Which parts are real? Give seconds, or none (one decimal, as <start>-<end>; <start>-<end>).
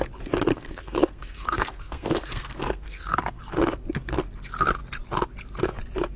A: 0.0-0.5; 3.4-6.2